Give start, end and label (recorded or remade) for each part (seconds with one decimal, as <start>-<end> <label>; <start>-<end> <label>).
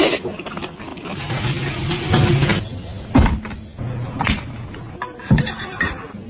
0.0-6.3 recorded